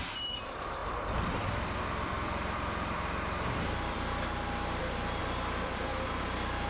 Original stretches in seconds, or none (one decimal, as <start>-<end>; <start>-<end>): none